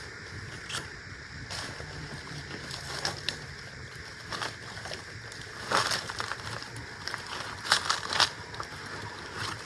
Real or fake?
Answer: fake